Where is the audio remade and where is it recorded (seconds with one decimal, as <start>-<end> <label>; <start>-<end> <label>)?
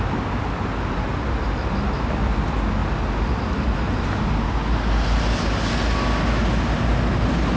0.0-7.6 recorded